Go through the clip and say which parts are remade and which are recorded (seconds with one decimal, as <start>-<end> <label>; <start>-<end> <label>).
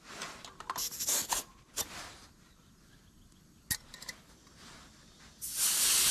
0.0-6.1 recorded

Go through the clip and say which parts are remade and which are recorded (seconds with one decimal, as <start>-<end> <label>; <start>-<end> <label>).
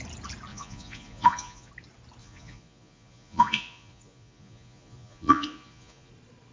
0.0-0.5 recorded; 0.5-1.7 remade; 1.7-2.2 recorded; 2.2-6.1 remade; 6.1-6.5 recorded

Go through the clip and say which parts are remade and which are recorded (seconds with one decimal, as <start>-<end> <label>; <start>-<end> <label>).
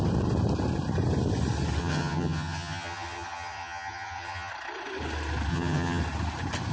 0.0-1.8 recorded; 1.8-4.5 remade; 4.5-5.5 recorded; 5.5-6.0 remade; 6.0-6.7 recorded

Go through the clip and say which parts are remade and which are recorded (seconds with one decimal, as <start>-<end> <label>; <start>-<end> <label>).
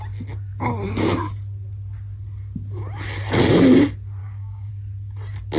0.0-4.2 recorded; 4.2-4.7 remade; 4.7-5.6 recorded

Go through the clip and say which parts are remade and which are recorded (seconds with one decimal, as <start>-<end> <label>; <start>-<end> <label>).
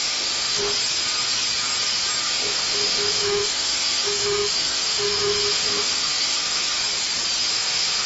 0.0-0.6 remade; 0.6-2.2 recorded; 2.2-6.8 remade; 6.8-7.5 recorded; 7.5-8.1 remade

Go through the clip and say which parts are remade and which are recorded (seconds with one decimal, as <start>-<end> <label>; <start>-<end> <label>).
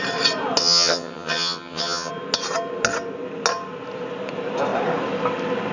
0.0-0.6 recorded; 0.6-2.1 remade; 2.1-5.7 recorded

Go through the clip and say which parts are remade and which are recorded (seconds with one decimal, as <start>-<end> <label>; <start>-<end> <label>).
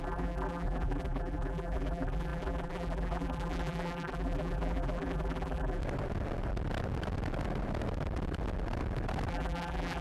0.0-5.8 remade; 5.8-9.3 recorded; 9.3-10.0 remade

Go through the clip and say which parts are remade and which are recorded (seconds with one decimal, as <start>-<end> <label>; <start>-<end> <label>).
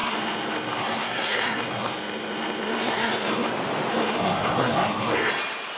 0.0-3.5 remade; 3.5-3.9 recorded; 3.9-5.3 remade; 5.3-5.8 recorded